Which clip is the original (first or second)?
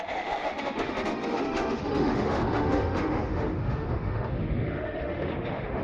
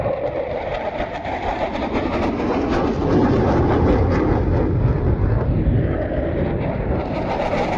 second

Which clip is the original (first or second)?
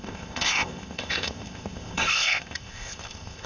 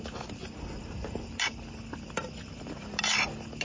second